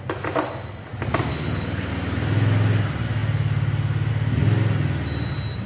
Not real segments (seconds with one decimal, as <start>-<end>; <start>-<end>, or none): 1.3-1.9